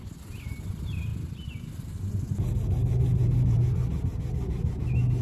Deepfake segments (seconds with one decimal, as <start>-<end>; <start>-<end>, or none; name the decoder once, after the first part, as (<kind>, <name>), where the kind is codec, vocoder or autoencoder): 3.2-3.7 (vocoder, Vocos)